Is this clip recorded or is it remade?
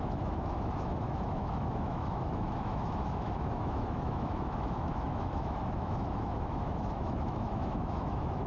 remade